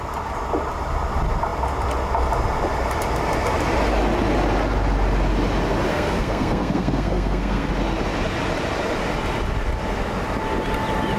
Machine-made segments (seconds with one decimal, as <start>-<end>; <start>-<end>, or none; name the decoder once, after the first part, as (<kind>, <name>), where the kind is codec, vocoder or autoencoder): 5.9-7.7 (codec, SNAC)